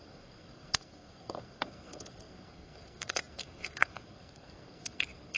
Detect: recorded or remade remade